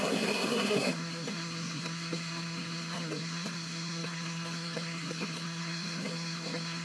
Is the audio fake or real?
fake